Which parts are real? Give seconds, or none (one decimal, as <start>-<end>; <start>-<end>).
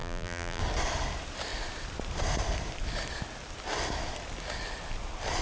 0.6-5.4